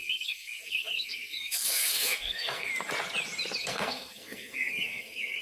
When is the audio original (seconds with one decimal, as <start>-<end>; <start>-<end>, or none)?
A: 2.7-3.6